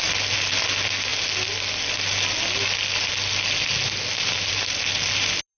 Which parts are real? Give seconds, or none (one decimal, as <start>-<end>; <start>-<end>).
0.0-5.6